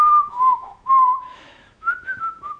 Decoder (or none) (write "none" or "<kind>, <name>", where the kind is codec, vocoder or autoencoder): autoencoder, DAC-VAE